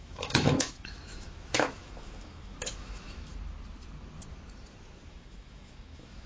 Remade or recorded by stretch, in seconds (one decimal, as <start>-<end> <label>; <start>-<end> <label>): 0.0-3.3 remade; 3.3-5.1 recorded; 5.1-6.3 remade